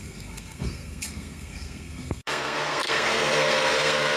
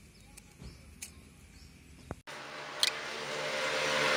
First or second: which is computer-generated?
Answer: first